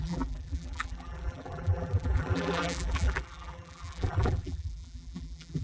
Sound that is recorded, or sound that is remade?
remade